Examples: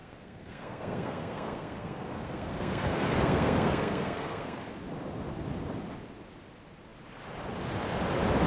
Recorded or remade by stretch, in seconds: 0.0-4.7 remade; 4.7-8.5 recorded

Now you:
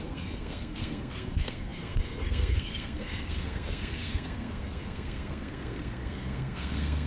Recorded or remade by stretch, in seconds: 0.0-7.1 remade